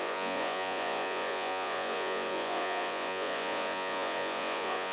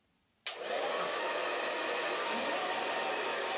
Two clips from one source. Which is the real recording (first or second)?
second